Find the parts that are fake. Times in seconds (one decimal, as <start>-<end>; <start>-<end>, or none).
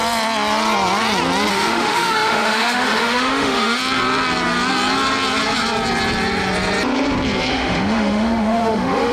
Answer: 1.5-3.8; 7.5-9.1